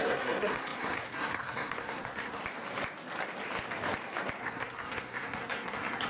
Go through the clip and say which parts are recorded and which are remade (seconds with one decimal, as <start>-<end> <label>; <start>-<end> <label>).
0.0-2.4 remade; 2.4-4.4 recorded; 4.4-6.1 remade